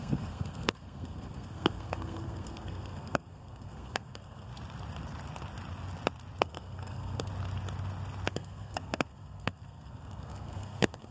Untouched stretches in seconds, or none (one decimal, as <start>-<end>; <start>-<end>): 4.5-6.4; 7.3-8.3